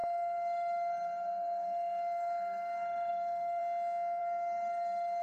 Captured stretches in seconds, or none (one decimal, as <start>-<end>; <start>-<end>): 3.6-4.2